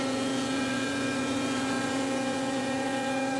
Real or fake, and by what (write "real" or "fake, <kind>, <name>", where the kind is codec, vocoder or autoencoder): fake, vocoder, Vocos